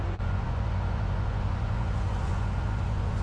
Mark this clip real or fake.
fake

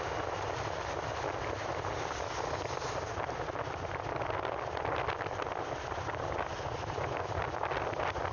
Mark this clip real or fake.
real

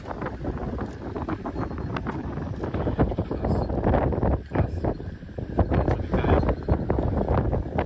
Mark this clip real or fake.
real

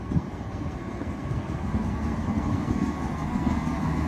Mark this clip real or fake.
fake